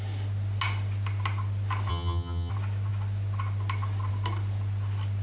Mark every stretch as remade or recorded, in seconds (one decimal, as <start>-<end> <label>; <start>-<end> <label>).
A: 0.0-1.9 recorded; 1.9-2.5 remade; 2.5-5.2 recorded